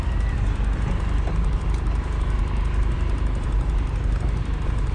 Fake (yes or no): no